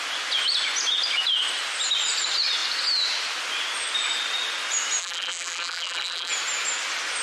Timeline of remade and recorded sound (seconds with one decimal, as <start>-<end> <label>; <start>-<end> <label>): 0.0-5.0 recorded; 5.0-6.3 remade; 6.3-7.2 recorded